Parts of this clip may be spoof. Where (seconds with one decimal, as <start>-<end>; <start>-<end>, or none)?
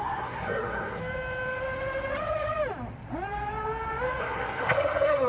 0.0-1.0; 4.2-5.3